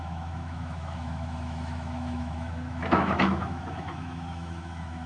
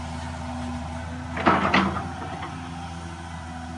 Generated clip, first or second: first